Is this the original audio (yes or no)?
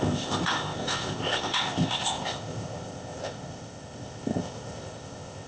no